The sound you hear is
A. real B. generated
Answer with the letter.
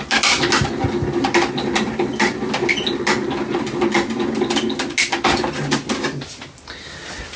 A